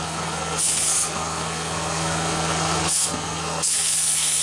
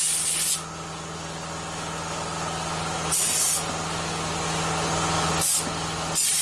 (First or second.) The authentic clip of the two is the second